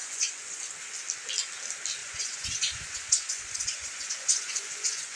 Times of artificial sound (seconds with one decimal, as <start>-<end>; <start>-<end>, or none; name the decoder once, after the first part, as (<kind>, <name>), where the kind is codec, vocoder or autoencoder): 0.0-0.6 (vocoder, Vocos); 2.0-5.2